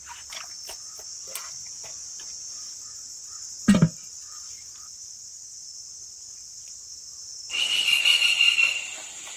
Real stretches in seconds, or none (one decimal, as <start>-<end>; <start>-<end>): 0.8-3.9; 5.2-6.4; 7.3-8.7